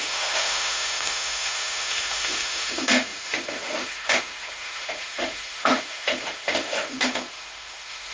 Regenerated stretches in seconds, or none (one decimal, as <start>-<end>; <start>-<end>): 0.0-8.1